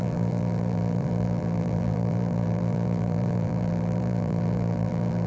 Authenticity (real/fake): fake